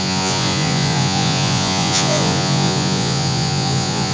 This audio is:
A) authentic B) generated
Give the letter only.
B